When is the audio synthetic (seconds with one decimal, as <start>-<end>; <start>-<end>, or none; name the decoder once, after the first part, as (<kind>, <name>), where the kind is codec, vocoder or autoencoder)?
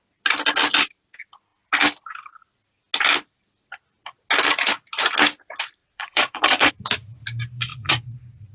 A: 5.8-6.7 (vocoder, Vocos); 7.7-8.5